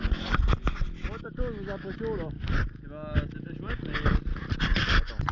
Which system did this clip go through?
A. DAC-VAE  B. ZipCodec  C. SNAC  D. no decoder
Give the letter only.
D